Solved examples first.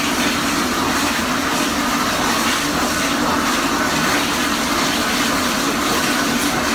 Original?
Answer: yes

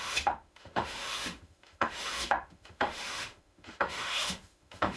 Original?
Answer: no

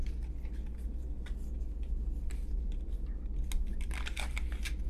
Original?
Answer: yes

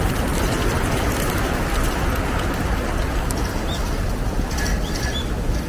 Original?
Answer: yes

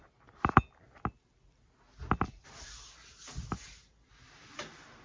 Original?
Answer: yes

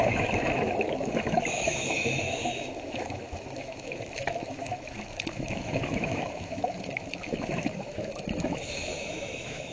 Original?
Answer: no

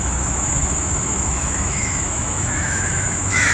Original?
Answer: no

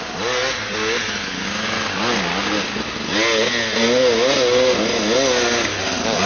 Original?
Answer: yes